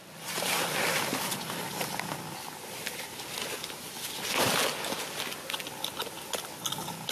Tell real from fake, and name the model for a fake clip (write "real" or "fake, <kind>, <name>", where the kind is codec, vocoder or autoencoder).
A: real